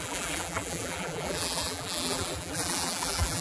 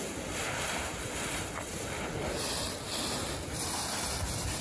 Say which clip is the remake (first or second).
first